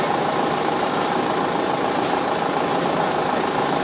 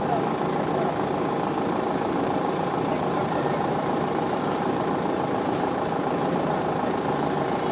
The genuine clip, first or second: first